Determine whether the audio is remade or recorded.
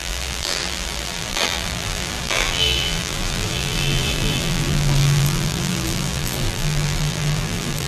remade